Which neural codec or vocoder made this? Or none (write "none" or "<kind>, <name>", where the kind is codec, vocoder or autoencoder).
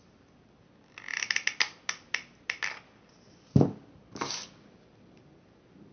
none